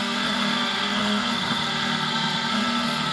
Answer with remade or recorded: remade